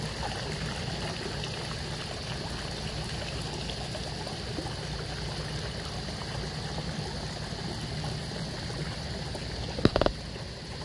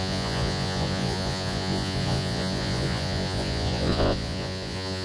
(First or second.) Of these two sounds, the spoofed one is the second